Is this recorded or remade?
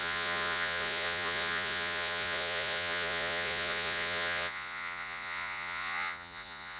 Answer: remade